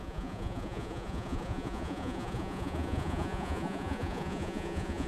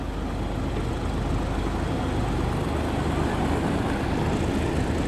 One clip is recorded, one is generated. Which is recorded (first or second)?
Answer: second